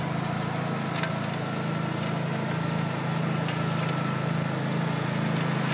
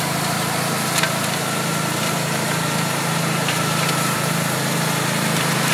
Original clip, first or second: first